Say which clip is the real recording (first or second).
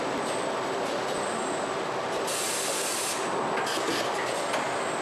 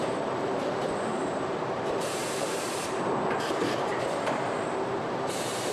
first